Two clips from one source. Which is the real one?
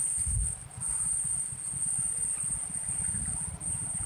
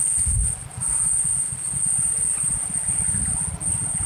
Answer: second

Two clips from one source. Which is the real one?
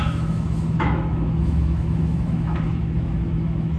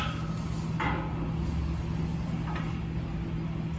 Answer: second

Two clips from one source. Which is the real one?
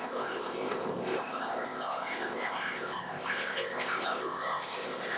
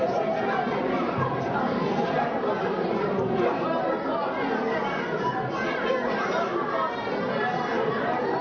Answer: second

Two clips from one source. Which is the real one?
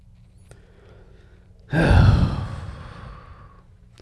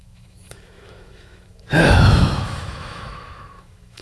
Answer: first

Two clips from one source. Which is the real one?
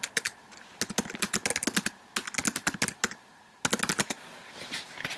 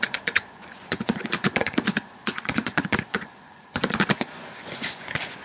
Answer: first